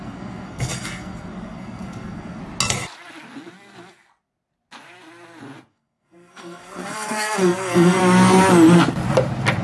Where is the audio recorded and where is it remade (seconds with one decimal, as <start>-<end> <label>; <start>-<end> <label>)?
0.0-2.4 remade; 2.4-5.7 recorded; 5.7-8.0 remade; 8.0-9.6 recorded